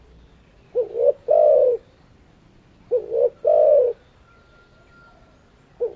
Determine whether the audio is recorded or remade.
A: recorded